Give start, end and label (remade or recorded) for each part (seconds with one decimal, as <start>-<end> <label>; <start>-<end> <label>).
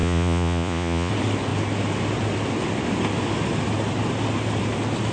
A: 0.0-1.1 remade; 1.1-5.1 recorded